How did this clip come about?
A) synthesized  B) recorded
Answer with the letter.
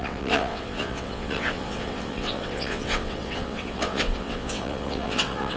A